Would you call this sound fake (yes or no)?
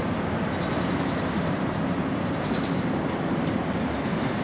no